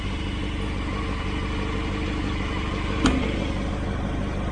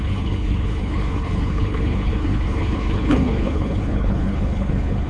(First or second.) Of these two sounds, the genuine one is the first